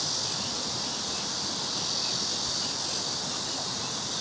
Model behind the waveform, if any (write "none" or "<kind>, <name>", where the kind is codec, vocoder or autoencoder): none